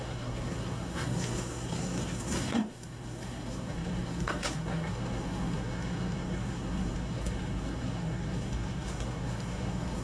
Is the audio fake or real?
fake